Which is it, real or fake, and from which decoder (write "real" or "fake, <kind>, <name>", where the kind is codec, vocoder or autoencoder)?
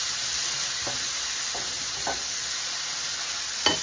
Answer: real